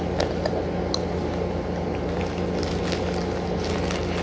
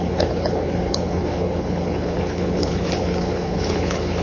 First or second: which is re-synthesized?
second